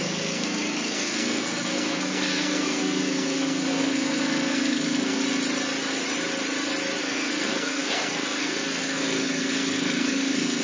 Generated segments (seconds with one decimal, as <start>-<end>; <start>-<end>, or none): 0.0-5.2; 7.0-10.6